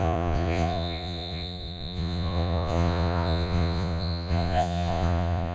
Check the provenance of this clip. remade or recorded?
remade